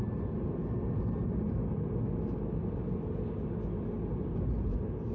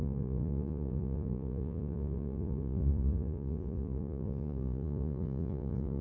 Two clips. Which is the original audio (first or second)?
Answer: first